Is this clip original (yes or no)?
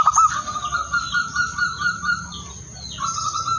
yes